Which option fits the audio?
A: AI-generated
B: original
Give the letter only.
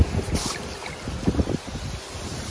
B